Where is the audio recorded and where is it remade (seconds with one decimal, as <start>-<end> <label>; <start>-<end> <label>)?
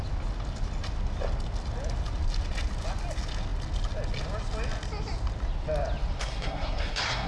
0.0-6.2 recorded; 6.2-7.3 remade